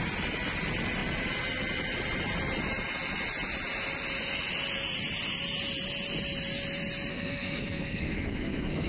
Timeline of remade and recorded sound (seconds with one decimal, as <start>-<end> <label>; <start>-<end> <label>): 0.0-7.1 recorded; 7.1-8.9 remade